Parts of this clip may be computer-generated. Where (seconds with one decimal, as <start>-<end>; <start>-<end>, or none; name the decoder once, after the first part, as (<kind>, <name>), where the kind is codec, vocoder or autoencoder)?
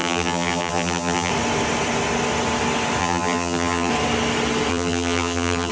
0.0-1.3 (vocoder, BigVGAN v2); 3.0-3.9; 4.7-5.7